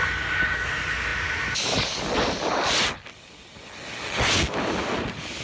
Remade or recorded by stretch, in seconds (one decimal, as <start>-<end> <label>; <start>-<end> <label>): 0.0-5.4 recorded